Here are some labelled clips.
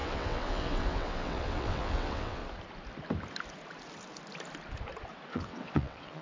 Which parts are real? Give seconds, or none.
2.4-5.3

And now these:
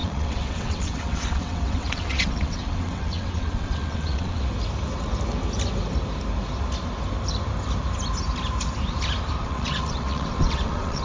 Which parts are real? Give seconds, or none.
4.4-9.4